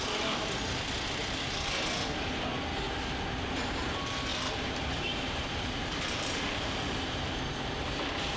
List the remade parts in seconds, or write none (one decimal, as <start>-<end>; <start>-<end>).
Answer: 4.3-7.4